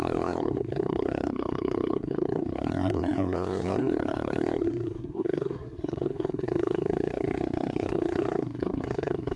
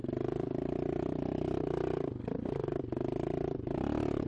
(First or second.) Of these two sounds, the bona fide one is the second